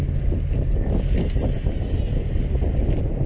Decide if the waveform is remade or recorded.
recorded